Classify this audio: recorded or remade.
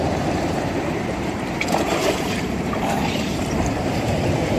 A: remade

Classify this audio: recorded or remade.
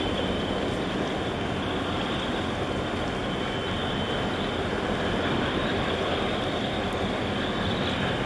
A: recorded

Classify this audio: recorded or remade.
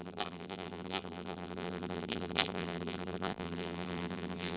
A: remade